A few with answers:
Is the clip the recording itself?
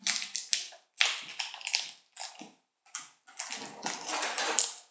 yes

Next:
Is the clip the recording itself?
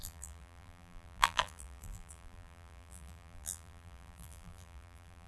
no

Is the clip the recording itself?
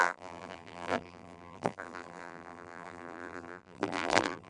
no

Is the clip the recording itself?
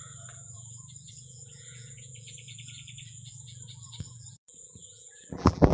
no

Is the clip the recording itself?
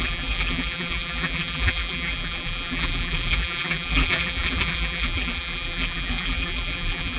no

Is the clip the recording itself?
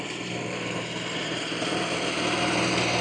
no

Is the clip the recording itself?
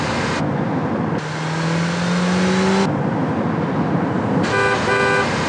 yes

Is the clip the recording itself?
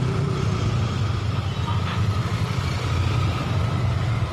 no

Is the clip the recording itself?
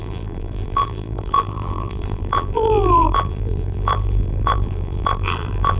no